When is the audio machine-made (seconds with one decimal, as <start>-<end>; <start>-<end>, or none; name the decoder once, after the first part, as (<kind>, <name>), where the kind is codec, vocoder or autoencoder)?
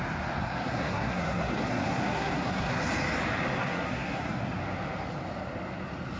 0.4-2.8 (codec, SNAC); 3.6-4.6